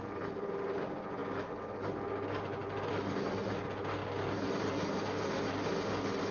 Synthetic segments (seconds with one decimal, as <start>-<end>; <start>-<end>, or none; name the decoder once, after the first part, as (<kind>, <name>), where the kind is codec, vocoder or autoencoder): none